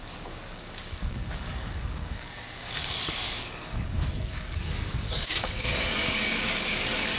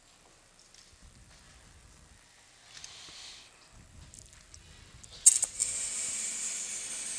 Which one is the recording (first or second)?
second